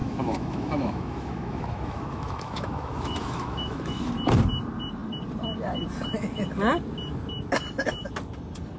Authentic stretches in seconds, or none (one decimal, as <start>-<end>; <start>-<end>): 4.1-8.8